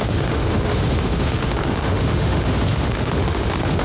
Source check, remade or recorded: remade